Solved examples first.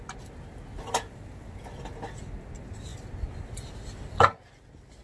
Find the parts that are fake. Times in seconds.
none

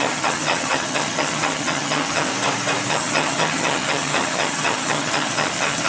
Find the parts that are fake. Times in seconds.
0.0-2.3 (vocoder, HiFi-GAN); 2.9-5.9

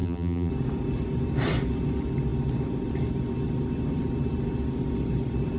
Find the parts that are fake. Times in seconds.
0.0-0.5 (vocoder, BigVGAN v2)